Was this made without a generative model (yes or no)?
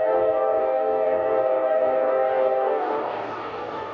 no